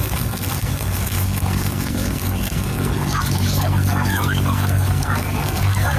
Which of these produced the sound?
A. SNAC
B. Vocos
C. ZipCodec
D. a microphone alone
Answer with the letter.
A